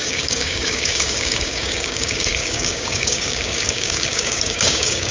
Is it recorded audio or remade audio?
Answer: remade